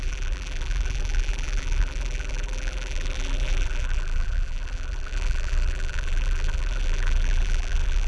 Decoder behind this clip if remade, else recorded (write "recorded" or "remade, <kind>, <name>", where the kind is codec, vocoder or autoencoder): remade, vocoder, BigVGAN v2